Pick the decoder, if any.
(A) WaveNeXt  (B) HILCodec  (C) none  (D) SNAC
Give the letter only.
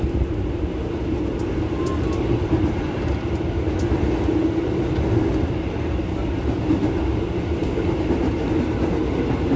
C